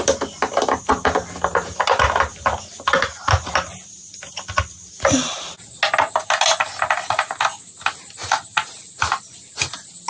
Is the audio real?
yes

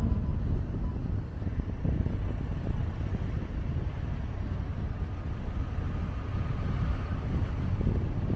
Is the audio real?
yes